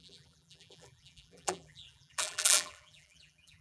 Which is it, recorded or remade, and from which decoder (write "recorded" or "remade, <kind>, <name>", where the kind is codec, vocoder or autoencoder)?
remade, vocoder, BigVGAN v2